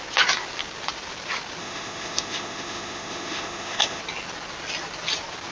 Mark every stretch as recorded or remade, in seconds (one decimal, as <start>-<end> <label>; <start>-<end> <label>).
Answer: 0.0-1.6 recorded; 1.6-4.0 remade; 4.0-5.5 recorded